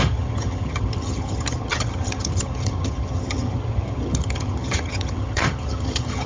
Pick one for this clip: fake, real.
fake